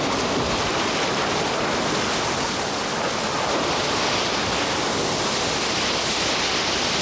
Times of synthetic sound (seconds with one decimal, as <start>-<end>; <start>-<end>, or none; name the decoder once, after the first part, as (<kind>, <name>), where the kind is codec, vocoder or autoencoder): none